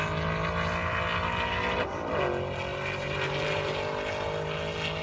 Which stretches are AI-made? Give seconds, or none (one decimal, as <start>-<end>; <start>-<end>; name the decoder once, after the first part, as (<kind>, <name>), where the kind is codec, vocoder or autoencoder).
2.7-3.8 (vocoder, BigVGAN v2)